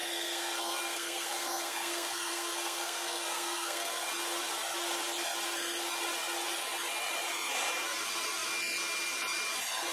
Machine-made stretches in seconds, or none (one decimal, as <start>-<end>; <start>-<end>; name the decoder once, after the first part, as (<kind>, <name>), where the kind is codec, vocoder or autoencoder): 0.0-4.1 (codec, SNAC)